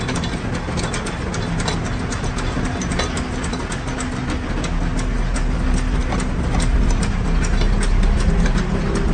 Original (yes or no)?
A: yes